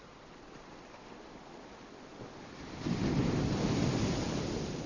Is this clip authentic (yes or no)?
yes